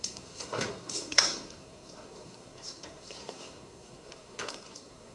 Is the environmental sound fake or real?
fake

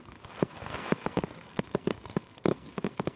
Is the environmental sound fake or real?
fake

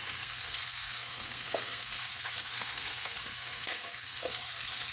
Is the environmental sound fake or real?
fake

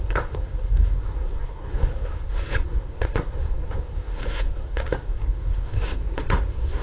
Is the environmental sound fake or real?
fake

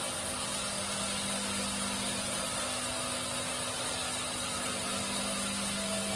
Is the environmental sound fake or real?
real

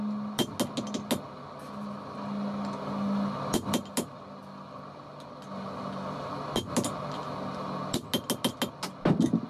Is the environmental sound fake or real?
real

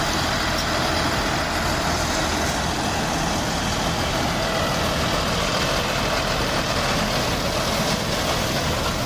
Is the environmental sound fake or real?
real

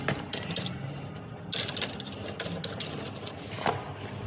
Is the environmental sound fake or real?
real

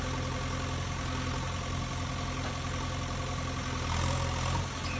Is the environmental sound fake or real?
real